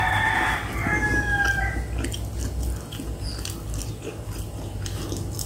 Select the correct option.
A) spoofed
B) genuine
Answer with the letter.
B